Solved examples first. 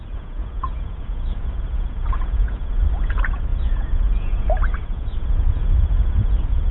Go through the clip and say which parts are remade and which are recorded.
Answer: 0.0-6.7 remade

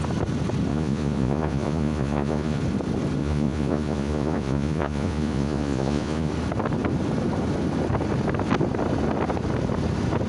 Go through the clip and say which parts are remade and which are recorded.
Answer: 0.0-0.7 recorded; 0.7-2.6 remade; 2.6-3.2 recorded; 3.2-6.3 remade; 6.3-10.3 recorded

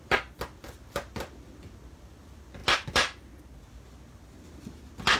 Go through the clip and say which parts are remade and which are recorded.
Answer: 0.0-5.2 recorded

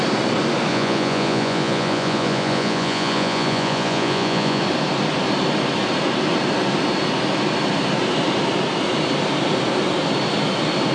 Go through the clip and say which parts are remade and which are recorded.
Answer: 0.0-0.7 recorded; 0.7-4.6 remade; 4.6-10.9 recorded

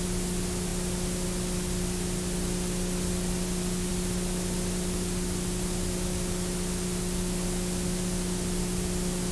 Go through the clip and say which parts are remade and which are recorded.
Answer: 0.0-9.3 recorded

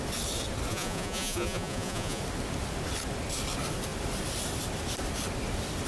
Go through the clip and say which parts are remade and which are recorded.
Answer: 0.0-0.7 recorded; 0.7-2.2 remade; 2.2-5.9 recorded

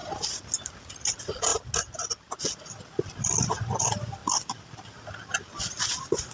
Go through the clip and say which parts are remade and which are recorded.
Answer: 0.0-6.3 recorded

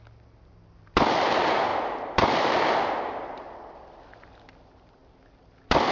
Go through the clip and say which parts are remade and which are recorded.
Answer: 0.0-5.9 recorded